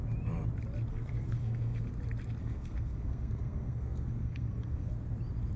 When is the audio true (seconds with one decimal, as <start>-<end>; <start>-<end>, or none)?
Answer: 0.0-0.9; 1.9-2.4; 4.9-5.6